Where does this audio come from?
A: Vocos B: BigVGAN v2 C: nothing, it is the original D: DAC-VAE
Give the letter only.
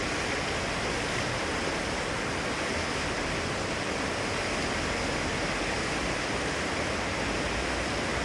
C